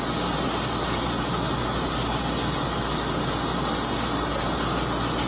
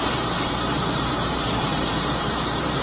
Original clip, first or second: first